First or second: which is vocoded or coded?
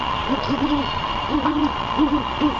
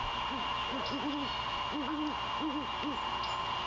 first